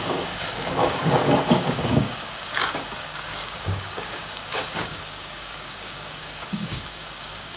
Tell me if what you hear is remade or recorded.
remade